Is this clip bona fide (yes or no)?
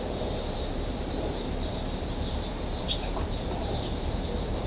no